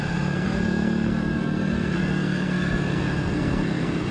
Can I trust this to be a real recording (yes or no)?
no